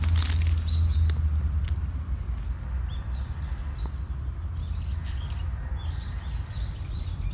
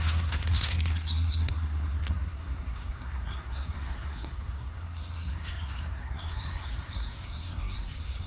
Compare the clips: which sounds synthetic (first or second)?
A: second